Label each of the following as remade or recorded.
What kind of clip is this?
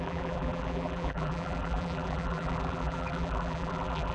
remade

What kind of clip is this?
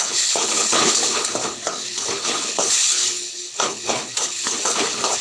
remade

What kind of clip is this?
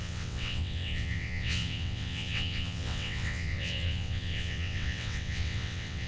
remade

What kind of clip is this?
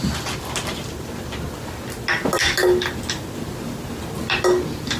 recorded